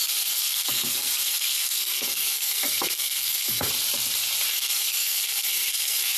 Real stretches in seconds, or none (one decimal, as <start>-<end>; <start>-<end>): 3.7-4.5